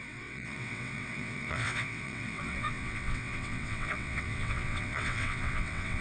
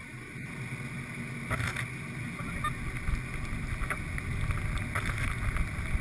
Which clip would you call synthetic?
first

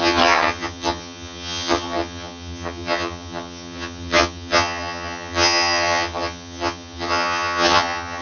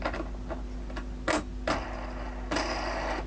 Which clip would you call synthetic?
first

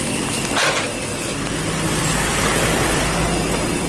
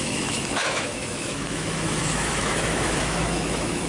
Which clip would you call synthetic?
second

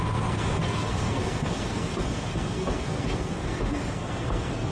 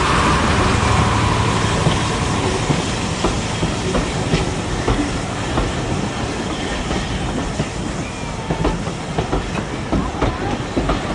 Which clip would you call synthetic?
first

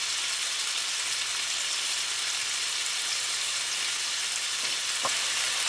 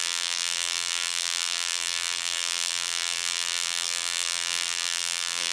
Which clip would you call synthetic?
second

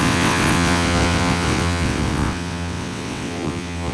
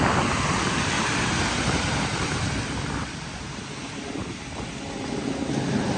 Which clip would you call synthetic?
first